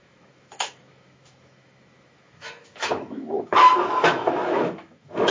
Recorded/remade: remade